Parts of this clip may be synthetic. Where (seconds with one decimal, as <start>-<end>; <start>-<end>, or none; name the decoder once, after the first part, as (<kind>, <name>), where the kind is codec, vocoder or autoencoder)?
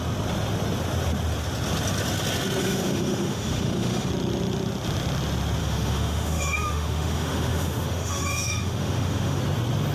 2.6-4.1 (autoencoder, DAC-VAE); 5.6-9.4